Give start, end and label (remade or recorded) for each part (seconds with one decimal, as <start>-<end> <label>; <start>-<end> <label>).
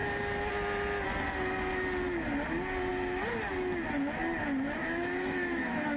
0.0-4.8 recorded; 4.8-6.0 remade